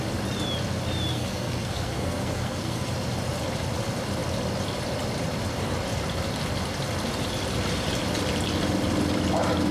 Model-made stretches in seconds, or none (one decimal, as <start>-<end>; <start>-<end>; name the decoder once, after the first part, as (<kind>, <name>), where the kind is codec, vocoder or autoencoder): 1.1-2.9 (codec, SNAC)